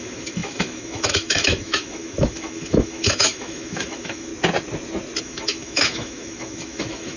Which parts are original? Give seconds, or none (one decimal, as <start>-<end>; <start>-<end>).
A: 4.3-5.2